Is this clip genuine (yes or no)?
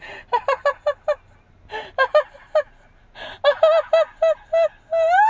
yes